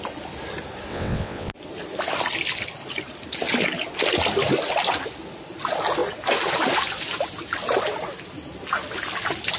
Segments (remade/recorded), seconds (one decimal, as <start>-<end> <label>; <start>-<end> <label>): 0.0-0.9 recorded; 0.9-1.5 remade; 1.5-9.6 recorded